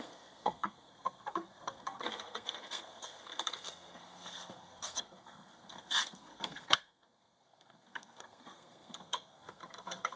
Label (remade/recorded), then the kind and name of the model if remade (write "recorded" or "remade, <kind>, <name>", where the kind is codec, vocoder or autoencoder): remade, codec, SNAC